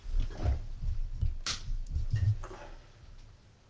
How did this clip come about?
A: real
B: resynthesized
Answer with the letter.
A